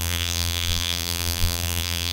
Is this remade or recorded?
remade